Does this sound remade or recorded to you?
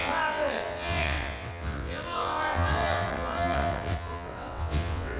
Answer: remade